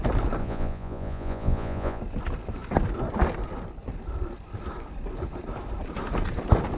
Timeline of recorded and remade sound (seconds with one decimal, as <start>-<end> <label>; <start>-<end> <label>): 0.0-0.4 recorded; 0.4-2.0 remade; 2.0-6.8 recorded